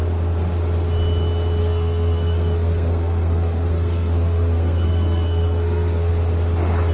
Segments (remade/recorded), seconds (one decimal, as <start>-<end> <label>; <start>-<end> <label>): 0.0-1.6 recorded; 1.6-6.1 remade; 6.1-6.9 recorded